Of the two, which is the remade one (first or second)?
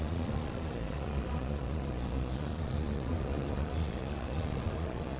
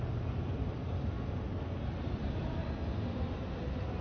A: first